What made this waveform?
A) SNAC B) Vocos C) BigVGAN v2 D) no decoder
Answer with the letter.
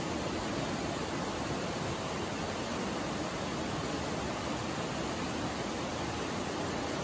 D